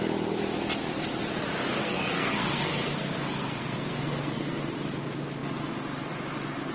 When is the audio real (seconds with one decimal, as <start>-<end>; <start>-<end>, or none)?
0.0-1.8; 4.6-6.7